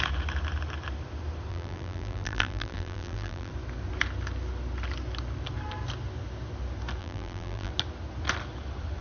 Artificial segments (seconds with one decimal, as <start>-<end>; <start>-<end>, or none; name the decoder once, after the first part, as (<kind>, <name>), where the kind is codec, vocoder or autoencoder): 1.5-3.5 (vocoder, BigVGAN v2); 7.0-7.7